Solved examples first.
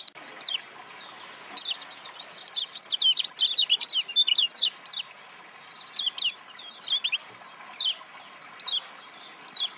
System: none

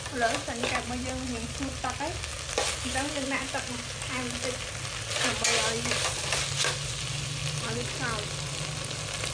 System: none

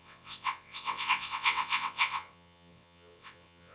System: vocoder, WaveNeXt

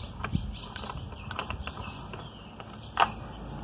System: none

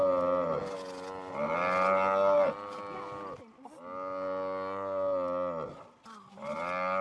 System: none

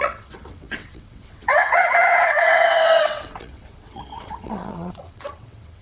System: vocoder, WaveNeXt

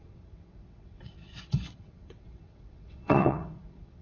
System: vocoder, WaveNeXt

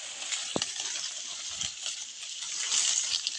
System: none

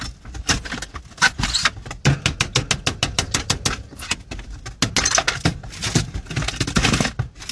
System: none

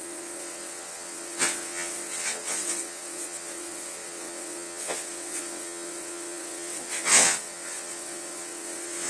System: vocoder, WaveNeXt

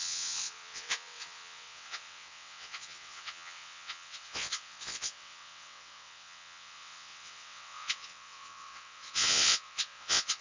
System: vocoder, WaveNeXt